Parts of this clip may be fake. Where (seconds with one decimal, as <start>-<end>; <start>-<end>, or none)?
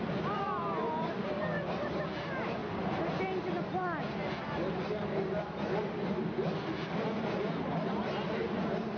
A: none